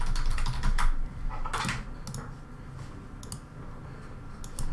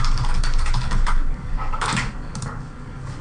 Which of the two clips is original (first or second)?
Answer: first